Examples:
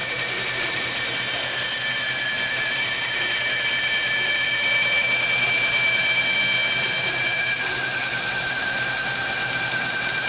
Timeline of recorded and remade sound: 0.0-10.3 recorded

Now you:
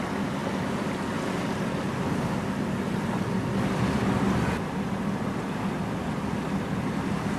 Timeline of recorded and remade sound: 0.0-7.4 recorded

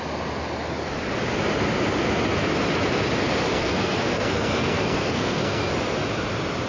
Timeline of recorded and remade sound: 0.0-3.5 recorded; 3.5-5.7 remade; 5.7-6.7 recorded

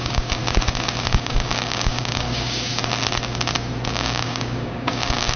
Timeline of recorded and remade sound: 0.0-0.4 remade; 0.4-1.1 recorded; 1.1-2.7 remade; 2.7-3.9 recorded; 3.9-5.4 remade

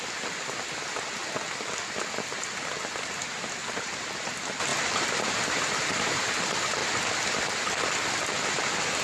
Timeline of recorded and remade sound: 0.0-3.6 recorded; 3.6-4.3 remade; 4.3-4.7 recorded; 4.7-6.3 remade; 6.3-9.0 recorded

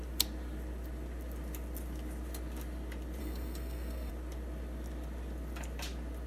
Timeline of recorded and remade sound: 0.0-3.2 recorded; 3.2-4.1 remade; 4.1-6.3 recorded

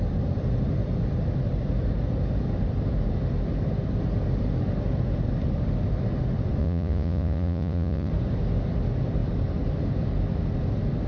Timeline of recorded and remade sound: 0.0-6.6 recorded; 6.6-8.1 remade; 8.1-11.1 recorded